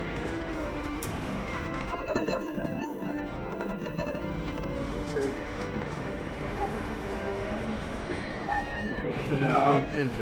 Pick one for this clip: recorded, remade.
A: remade